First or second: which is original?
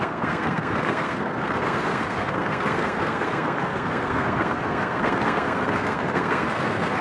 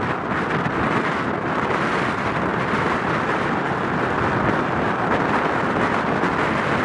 second